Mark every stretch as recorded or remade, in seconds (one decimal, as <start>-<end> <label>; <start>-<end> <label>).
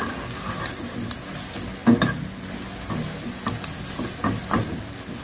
0.0-5.2 recorded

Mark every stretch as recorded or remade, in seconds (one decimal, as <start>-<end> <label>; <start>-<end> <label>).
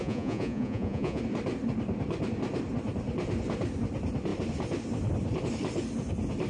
0.0-1.2 remade; 1.2-6.5 recorded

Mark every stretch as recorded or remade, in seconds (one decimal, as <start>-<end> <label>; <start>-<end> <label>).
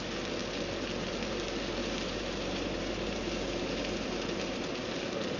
0.0-1.8 recorded; 1.8-5.0 remade; 5.0-5.4 recorded